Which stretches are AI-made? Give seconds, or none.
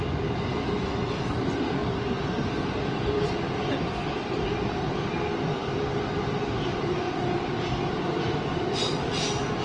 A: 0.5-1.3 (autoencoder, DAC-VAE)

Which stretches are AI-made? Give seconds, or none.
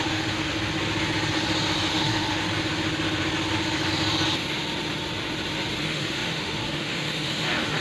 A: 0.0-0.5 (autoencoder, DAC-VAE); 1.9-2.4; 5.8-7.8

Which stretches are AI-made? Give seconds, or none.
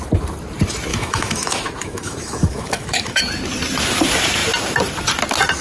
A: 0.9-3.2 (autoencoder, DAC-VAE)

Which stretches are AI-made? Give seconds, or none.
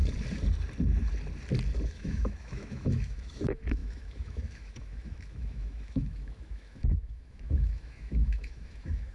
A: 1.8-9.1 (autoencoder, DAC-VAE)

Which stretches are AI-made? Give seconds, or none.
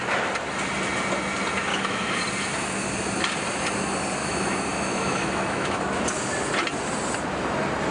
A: 1.7-2.2 (autoencoder, DAC-VAE); 4.2-5.8